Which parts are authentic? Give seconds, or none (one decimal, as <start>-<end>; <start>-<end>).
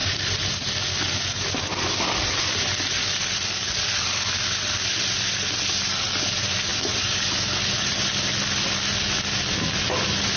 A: 0.7-6.7; 7.9-10.4